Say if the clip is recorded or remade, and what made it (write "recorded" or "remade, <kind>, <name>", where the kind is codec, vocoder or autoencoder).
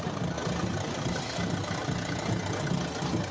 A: recorded